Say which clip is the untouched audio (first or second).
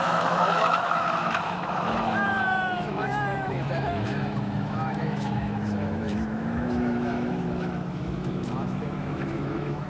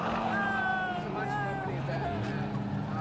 second